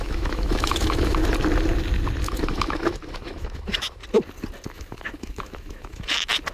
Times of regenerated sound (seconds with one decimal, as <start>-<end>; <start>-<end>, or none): 0.0-1.2; 2.2-4.0; 4.7-6.5